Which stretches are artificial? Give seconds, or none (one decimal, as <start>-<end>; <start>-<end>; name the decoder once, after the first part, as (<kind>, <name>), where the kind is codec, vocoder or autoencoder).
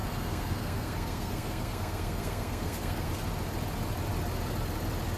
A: 0.0-3.1 (codec, SNAC)